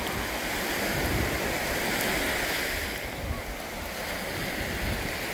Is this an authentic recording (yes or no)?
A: yes